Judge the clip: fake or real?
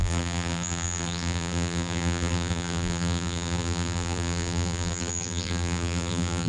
fake